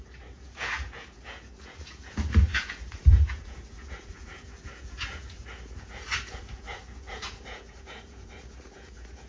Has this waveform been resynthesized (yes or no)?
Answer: yes